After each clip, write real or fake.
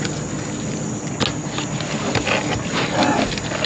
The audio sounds real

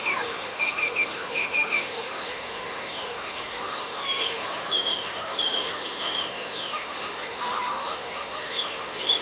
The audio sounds fake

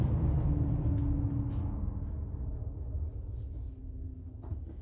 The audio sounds real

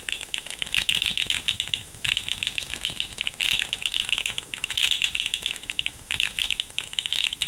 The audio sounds fake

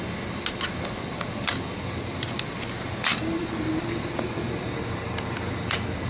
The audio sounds real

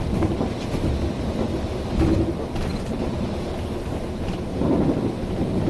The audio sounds real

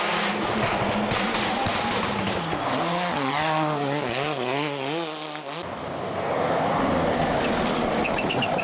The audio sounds real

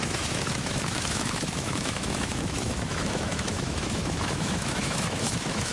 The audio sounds fake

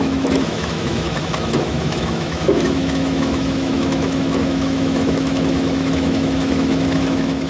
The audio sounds fake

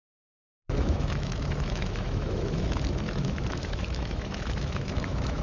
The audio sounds fake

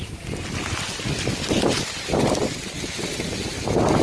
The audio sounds real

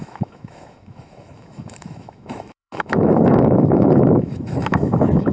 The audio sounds fake